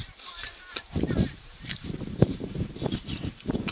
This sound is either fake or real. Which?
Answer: fake